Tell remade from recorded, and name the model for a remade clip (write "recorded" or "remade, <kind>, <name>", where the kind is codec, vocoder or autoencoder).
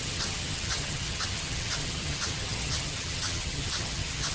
remade, vocoder, HiFi-GAN